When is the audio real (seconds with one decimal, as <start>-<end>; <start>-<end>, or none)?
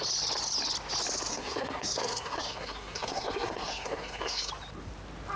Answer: 0.0-1.3; 4.5-5.4